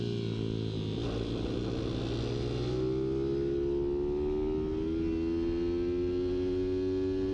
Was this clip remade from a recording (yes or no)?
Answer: no